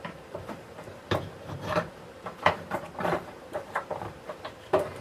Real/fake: fake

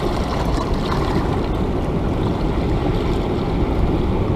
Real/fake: real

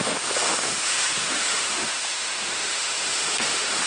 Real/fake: fake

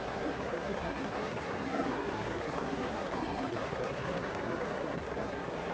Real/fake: fake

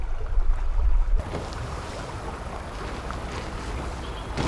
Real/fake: real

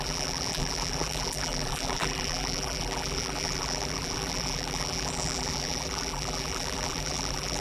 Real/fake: fake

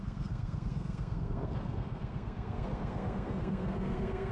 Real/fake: fake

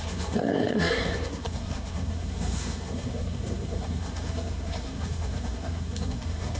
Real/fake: fake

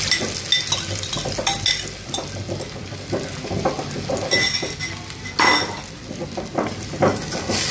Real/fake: real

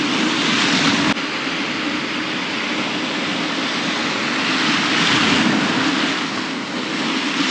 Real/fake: real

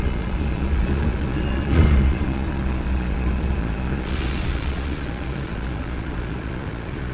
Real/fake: fake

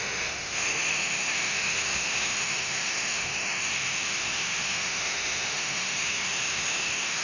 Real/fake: fake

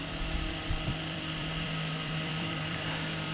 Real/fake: fake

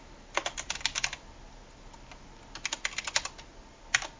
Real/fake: real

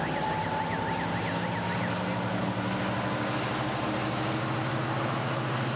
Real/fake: real